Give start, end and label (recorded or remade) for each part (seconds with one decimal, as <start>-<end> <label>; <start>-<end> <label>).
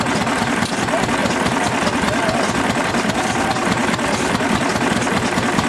0.0-5.7 recorded